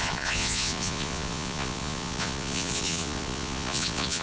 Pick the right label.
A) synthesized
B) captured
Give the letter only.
A